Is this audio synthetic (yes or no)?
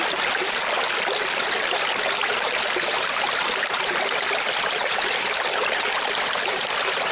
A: no